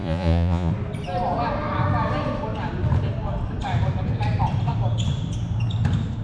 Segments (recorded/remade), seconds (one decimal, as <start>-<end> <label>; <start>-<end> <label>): 0.0-0.7 remade; 0.7-6.2 recorded